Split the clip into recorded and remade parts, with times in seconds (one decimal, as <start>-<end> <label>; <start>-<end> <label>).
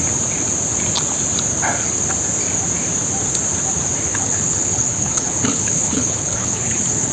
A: 0.0-4.1 recorded; 4.1-7.1 remade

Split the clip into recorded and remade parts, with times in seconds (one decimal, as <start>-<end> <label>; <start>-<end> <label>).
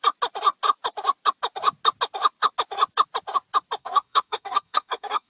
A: 0.0-3.8 recorded; 3.8-5.3 remade